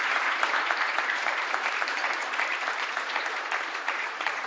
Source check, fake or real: fake